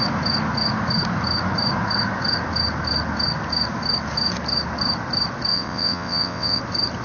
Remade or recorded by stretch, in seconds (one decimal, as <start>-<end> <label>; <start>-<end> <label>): 0.0-5.5 recorded; 5.5-6.6 remade; 6.6-7.0 recorded